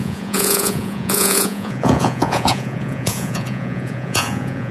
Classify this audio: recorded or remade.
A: remade